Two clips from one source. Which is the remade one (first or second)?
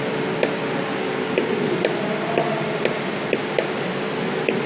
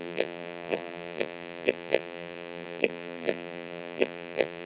second